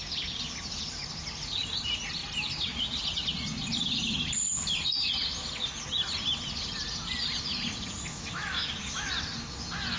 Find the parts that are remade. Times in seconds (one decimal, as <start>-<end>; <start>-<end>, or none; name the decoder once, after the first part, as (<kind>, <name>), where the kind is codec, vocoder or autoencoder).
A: 8.1-9.1 (autoencoder, DAC-VAE)